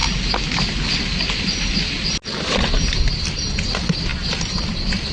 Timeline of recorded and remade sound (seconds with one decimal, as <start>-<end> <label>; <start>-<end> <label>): 0.0-5.1 recorded